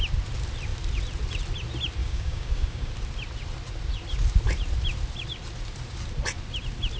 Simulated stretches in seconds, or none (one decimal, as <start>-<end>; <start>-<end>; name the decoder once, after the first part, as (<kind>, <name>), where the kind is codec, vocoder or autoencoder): 2.0-2.9 (codec, DAC)